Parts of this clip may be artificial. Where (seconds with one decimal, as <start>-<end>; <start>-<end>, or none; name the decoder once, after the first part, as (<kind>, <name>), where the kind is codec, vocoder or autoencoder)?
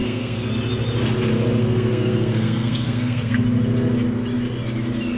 0.0-0.5 (codec, SNAC); 1.6-3.4